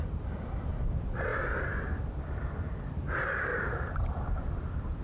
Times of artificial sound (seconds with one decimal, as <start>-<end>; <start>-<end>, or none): none